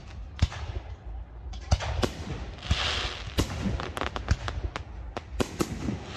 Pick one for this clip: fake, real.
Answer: real